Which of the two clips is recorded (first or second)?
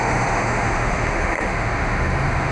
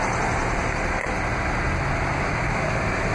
second